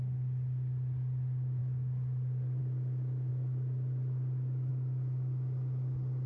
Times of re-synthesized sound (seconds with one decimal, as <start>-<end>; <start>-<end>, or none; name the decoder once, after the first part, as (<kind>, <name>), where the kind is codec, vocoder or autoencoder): none